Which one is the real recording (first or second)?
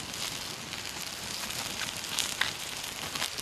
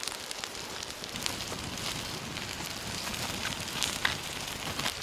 first